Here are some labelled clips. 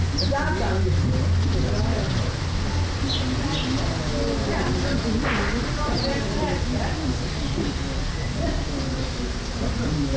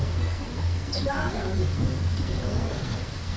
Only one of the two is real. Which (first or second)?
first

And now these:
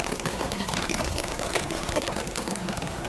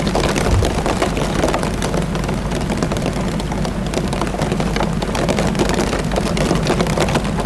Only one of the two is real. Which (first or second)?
second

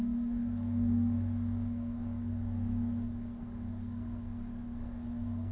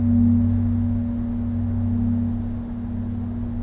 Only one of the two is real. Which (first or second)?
second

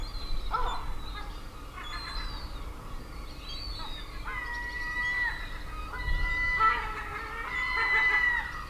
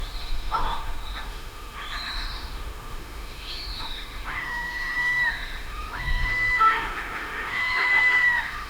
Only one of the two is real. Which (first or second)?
first